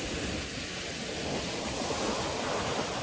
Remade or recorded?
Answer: recorded